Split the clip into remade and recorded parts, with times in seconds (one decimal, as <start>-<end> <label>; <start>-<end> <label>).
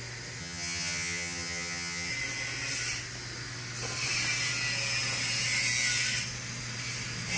0.0-0.4 recorded; 0.4-2.1 remade; 2.1-7.4 recorded